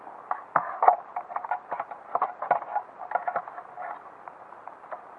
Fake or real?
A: real